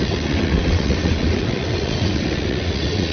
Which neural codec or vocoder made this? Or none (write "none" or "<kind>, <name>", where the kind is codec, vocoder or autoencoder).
vocoder, WaveNeXt